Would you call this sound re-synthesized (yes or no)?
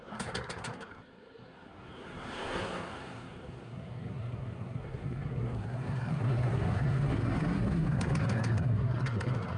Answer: yes